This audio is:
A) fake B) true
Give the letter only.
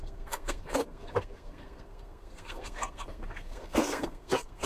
A